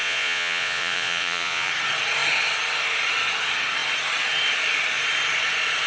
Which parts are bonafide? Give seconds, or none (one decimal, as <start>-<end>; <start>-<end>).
1.7-5.9